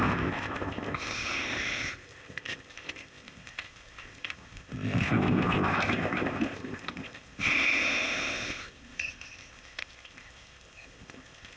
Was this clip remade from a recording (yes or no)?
yes